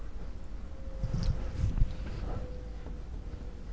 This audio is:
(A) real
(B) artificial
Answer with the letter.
A